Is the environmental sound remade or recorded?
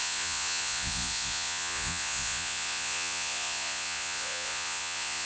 remade